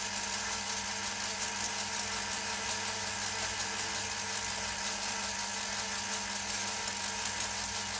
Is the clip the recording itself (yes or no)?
yes